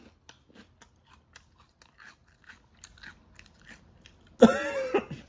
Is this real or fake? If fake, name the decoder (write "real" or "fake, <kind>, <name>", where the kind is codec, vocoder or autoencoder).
real